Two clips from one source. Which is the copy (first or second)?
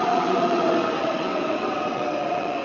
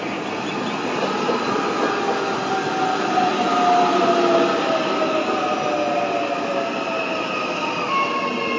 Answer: first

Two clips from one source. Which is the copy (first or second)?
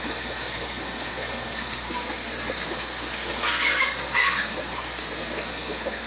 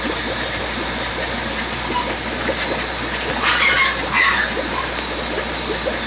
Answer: first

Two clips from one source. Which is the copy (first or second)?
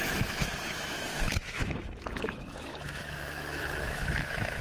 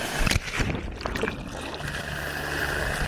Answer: first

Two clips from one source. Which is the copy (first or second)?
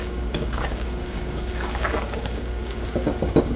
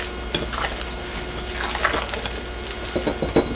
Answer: first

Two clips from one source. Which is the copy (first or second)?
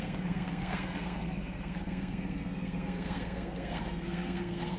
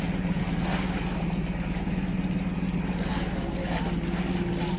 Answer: first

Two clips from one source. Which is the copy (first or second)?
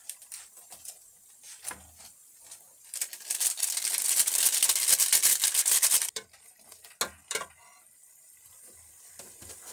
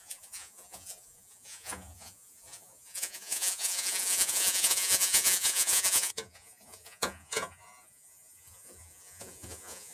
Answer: second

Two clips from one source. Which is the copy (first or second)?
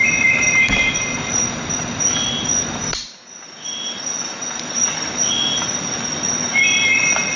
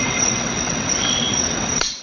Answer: second